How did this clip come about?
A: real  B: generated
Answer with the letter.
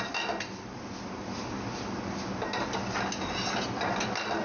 A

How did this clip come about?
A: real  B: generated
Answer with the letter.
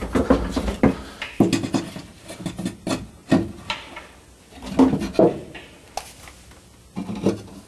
A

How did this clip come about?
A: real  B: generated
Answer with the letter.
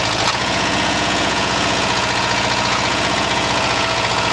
B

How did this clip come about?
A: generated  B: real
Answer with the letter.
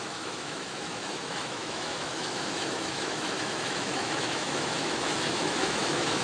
A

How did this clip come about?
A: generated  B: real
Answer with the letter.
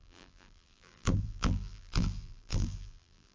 A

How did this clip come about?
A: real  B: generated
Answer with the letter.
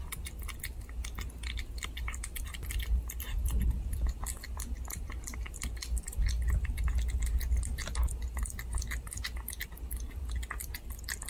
A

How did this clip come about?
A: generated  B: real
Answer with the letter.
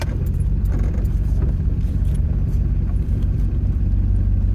A